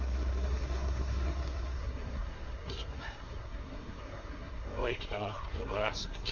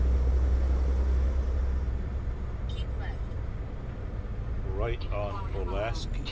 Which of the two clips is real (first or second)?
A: second